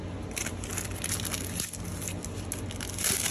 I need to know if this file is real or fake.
real